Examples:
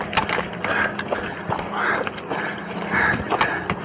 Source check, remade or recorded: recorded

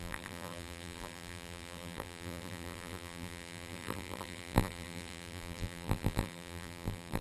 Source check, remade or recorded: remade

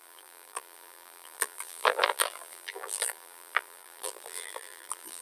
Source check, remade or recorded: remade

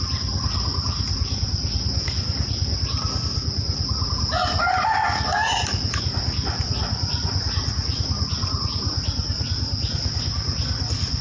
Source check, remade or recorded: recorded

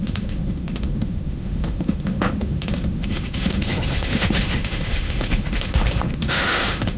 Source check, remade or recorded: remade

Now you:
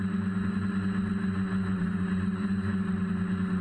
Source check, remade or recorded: recorded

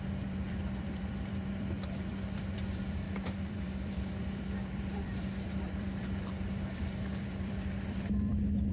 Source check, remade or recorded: remade